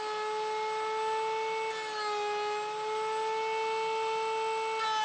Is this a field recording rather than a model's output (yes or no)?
yes